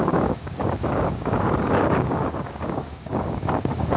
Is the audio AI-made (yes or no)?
yes